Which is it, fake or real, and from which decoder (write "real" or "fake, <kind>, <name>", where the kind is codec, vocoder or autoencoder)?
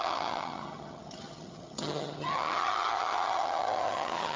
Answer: fake, vocoder, HiFi-GAN